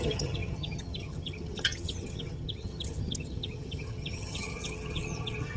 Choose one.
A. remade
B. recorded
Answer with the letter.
A